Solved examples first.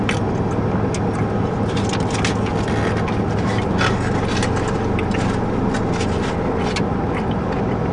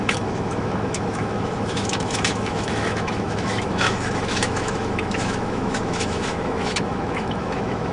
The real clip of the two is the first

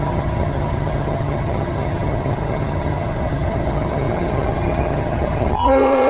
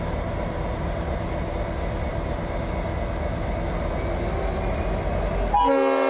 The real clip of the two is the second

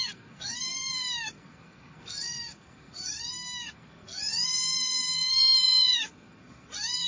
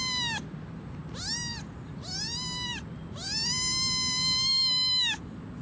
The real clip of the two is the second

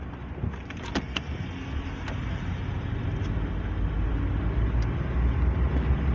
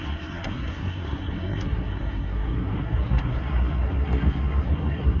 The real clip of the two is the first